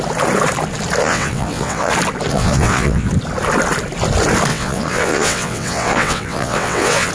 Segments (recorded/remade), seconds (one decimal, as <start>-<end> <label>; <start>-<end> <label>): 0.0-1.0 recorded; 1.0-1.9 remade; 1.9-2.3 recorded; 2.3-3.1 remade; 3.1-4.5 recorded; 4.5-7.1 remade